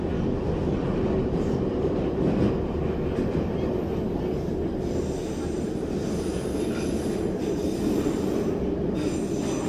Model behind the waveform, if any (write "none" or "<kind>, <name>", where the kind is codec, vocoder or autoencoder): none